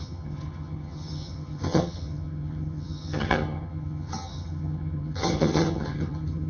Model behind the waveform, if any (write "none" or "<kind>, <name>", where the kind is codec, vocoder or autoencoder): vocoder, HiFi-GAN